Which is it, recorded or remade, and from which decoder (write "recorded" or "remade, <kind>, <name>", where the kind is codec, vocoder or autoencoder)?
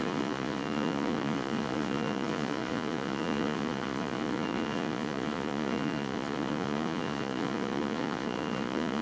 remade, vocoder, Vocos